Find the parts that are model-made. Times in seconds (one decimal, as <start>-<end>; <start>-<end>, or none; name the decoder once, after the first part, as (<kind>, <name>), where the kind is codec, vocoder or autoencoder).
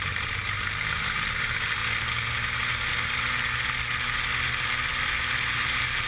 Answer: 0.0-1.8 (vocoder, BigVGAN v2); 5.5-6.1